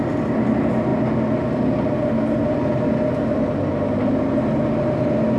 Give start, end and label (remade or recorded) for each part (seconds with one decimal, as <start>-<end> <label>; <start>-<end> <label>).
0.0-5.4 recorded